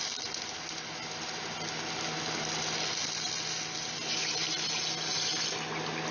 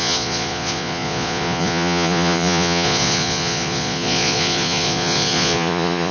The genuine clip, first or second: first